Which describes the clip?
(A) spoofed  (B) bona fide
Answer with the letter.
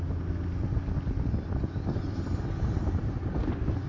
B